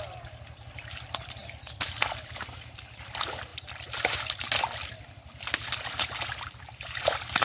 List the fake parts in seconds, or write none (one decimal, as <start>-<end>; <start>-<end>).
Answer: none